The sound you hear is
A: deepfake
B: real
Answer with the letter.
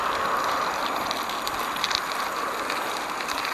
A